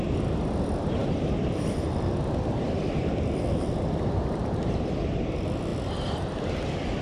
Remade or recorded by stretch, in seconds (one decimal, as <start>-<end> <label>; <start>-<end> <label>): 0.0-1.0 recorded; 1.0-5.2 remade; 5.2-7.0 recorded